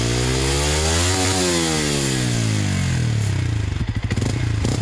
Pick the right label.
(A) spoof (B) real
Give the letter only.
B